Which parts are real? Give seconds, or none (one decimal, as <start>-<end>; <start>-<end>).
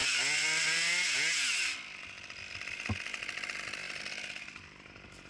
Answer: 0.0-5.3